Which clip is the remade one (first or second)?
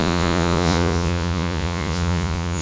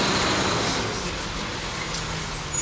first